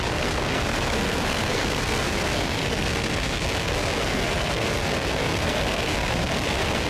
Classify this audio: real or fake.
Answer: fake